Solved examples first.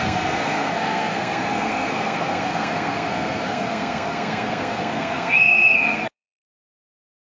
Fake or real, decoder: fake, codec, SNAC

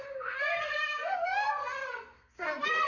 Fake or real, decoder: fake, codec, SNAC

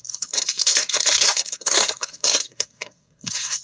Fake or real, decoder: fake, codec, SNAC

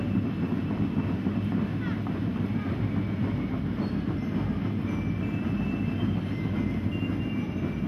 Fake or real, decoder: real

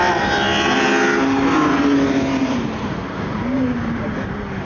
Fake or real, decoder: real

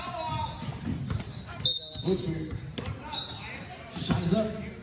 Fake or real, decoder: real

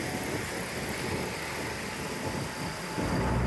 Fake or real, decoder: real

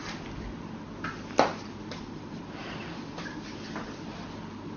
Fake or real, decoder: real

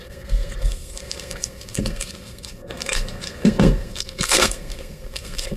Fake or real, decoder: fake, codec, SNAC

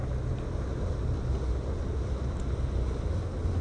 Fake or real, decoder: real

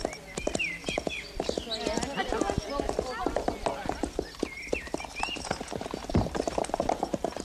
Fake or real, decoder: real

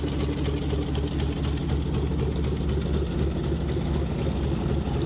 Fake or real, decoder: real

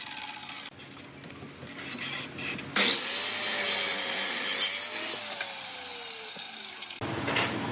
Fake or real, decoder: real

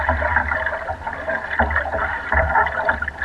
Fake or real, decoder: real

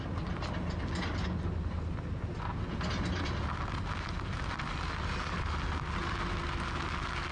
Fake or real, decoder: real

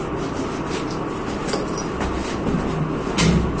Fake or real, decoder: real